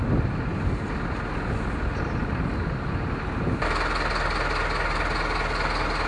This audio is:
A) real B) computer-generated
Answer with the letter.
A